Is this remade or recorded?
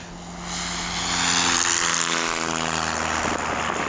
recorded